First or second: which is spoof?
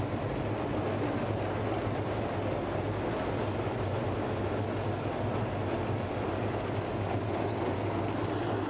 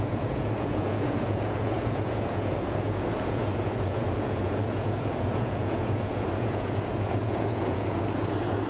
second